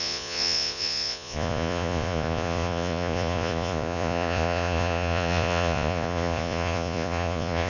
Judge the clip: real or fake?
fake